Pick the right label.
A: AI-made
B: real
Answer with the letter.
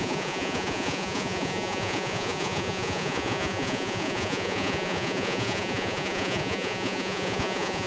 A